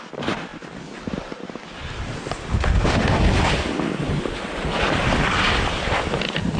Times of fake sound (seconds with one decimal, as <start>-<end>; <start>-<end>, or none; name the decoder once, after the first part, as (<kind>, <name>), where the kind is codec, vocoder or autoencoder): 2.4-3.2 (autoencoder, DAC-VAE)